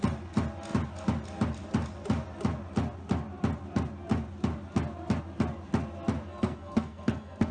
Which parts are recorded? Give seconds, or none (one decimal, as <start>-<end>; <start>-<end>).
0.0-6.3